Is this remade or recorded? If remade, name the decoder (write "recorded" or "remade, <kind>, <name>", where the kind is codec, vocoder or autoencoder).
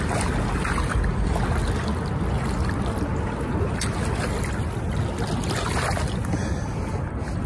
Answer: recorded